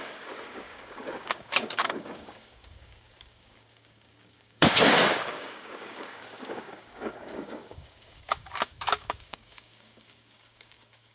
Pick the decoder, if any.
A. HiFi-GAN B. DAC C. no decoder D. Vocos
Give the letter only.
B